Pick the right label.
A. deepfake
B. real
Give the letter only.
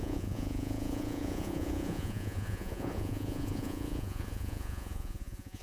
A